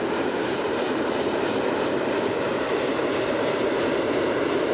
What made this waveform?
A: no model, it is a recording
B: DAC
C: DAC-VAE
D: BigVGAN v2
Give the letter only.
D